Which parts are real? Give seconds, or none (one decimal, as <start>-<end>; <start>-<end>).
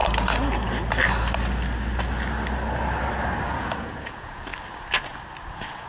0.0-3.5; 4.5-5.5